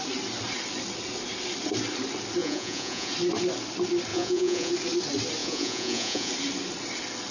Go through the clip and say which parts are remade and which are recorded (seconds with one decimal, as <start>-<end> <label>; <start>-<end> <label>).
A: 0.0-2.4 recorded; 2.4-3.1 remade; 3.1-4.1 recorded; 4.1-4.7 remade; 4.7-5.4 recorded; 5.4-6.3 remade; 6.3-7.3 recorded